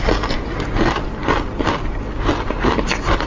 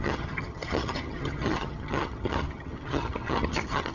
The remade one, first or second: second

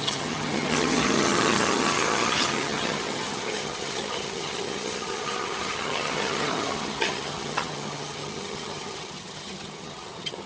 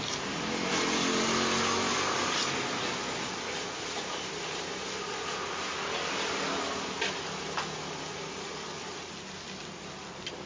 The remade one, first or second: first